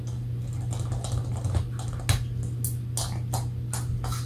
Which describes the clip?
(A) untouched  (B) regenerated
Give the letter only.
A